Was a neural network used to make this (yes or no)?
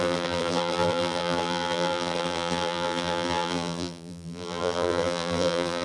yes